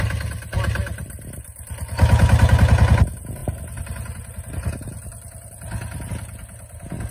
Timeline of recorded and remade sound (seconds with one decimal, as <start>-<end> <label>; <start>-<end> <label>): 0.0-7.1 recorded